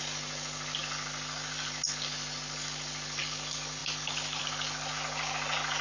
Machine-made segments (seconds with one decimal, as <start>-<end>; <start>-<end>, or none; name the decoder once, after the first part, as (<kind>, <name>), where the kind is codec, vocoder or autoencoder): none